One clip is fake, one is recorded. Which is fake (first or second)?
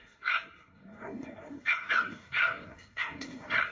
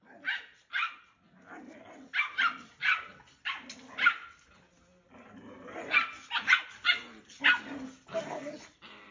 first